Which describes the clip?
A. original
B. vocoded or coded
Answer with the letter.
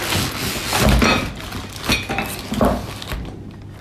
A